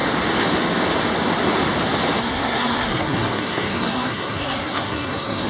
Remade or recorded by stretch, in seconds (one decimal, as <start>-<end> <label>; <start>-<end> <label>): 0.0-2.2 recorded; 2.2-5.5 remade